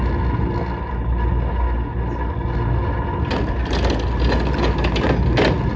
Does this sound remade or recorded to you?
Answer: recorded